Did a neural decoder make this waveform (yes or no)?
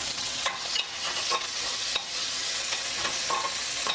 yes